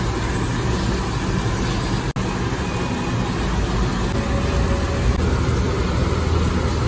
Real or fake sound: real